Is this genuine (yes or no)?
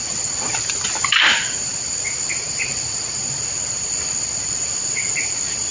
no